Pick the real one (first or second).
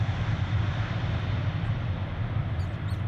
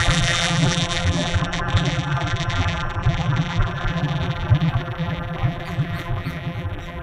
first